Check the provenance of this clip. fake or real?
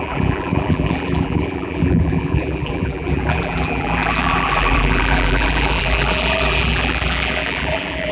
fake